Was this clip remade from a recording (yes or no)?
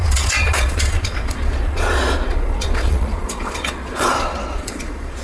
yes